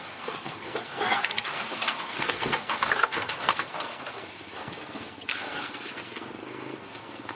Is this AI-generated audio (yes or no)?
yes